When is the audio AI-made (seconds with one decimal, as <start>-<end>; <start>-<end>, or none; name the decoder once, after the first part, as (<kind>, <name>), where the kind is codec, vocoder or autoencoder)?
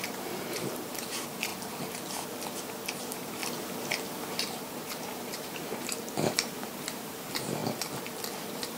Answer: 0.0-1.5 (vocoder, BigVGAN v2); 2.6-3.4; 4.4-7.6; 8.3-8.8